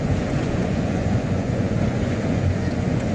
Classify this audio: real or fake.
fake